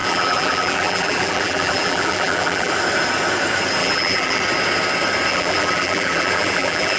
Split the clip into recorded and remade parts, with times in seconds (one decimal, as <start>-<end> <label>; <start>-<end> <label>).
0.0-2.7 remade; 2.7-3.8 recorded; 3.8-4.4 remade; 4.4-5.3 recorded; 5.3-7.0 remade